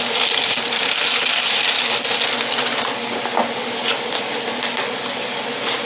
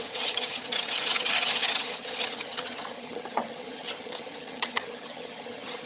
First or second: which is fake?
second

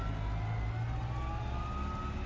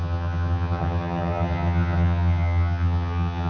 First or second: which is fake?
second